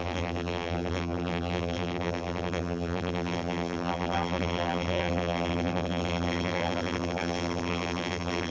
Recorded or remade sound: remade